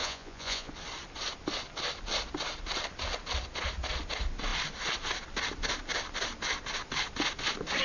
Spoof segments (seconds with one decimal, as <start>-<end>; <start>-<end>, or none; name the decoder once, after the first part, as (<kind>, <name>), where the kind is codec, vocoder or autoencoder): 0.0-0.7 (vocoder, Vocos)